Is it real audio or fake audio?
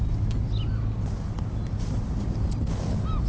real